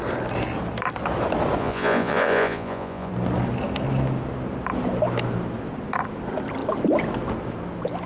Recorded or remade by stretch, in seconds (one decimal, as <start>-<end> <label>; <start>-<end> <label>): 0.0-1.6 recorded; 1.6-3.1 remade; 3.1-8.1 recorded